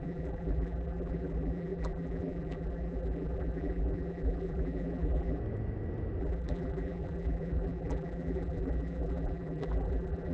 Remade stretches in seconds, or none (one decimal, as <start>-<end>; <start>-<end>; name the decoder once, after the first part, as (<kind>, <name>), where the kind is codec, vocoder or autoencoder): 0.0-5.4 (vocoder, BigVGAN v2); 6.2-10.3